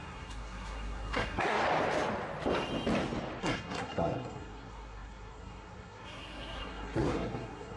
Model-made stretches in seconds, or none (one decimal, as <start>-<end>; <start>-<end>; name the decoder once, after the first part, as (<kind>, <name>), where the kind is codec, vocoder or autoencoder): 0.0-1.6 (codec, SNAC); 3.4-7.8

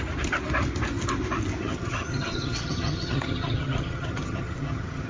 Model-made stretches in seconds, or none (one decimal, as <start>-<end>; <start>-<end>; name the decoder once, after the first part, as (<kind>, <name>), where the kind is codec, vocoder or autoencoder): 1.6-5.1 (vocoder, HiFi-GAN)

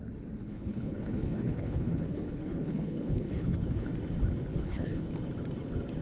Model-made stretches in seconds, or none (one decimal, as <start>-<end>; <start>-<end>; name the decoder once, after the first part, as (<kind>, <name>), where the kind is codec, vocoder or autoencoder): 0.4-3.9 (codec, HILCodec); 4.5-5.1

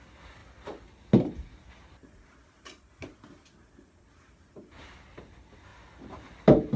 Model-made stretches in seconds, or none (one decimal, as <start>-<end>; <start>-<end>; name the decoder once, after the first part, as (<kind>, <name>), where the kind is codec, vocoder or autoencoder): none

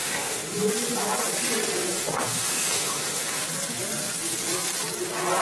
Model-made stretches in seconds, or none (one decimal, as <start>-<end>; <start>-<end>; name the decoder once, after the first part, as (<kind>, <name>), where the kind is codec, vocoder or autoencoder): 0.0-0.7 (autoencoder, DAC-VAE); 1.8-3.4